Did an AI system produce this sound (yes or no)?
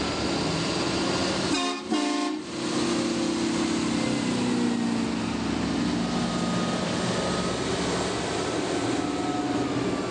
no